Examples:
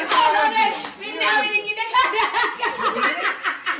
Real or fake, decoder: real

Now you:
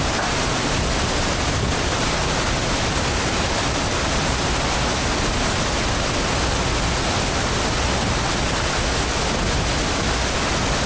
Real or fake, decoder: real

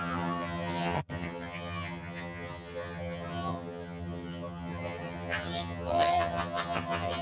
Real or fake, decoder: fake, vocoder, HiFi-GAN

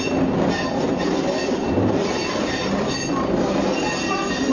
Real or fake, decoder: real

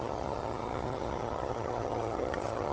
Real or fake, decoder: fake, vocoder, HiFi-GAN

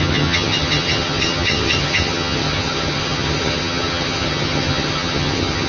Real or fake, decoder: fake, vocoder, HiFi-GAN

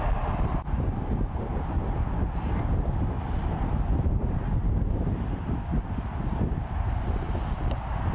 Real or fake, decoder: real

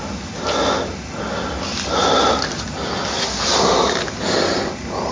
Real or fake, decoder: real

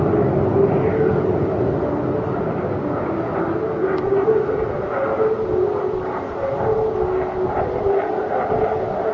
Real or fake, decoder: real